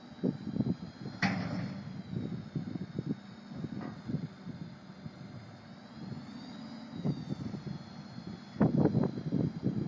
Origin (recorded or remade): recorded